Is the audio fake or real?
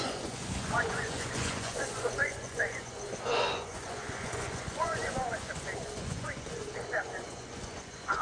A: fake